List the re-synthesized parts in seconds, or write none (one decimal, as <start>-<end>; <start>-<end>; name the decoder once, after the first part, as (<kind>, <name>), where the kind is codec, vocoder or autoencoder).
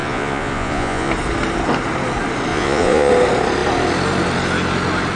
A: 0.0-1.1 (vocoder, Vocos); 2.5-3.1